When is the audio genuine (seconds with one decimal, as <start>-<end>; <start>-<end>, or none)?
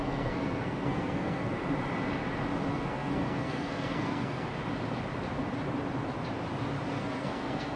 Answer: 1.6-2.7; 4.5-6.9